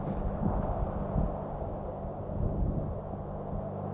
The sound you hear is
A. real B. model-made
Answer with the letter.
A